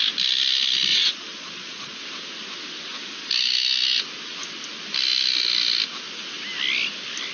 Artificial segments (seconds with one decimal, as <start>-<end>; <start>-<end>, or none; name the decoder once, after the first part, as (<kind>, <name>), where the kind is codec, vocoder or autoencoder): 0.9-2.0 (vocoder, Vocos)